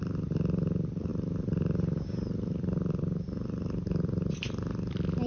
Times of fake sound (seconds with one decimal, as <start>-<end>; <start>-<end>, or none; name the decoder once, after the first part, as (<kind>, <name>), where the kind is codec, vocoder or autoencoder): none